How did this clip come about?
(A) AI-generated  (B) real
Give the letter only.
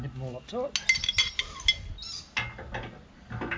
B